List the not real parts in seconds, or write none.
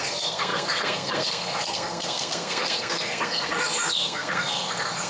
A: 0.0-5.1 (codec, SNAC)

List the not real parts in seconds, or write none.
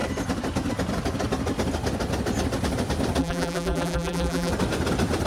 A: 3.2-4.5 (vocoder, BigVGAN v2)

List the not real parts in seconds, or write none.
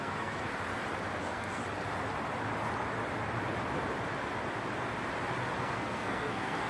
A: 0.0-0.5 (codec, SNAC); 1.2-1.6; 5.6-6.7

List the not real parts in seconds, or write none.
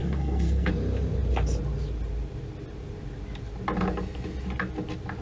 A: 0.0-0.7 (codec, SNAC)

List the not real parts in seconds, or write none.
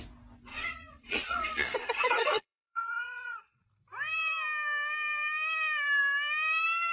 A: 0.5-3.7 (vocoder, Vocos)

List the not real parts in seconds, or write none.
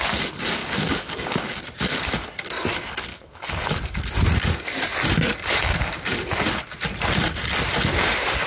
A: 0.6-1.6 (codec, DAC); 3.1-3.8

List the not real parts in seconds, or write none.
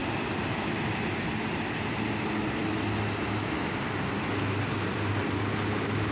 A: 1.9-2.6 (vocoder, BigVGAN v2); 5.1-6.1